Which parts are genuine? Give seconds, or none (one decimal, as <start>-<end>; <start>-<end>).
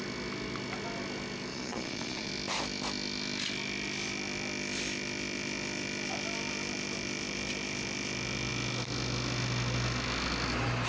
0.0-1.5; 2.3-10.9